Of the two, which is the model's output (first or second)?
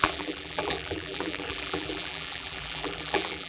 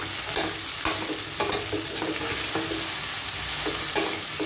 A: first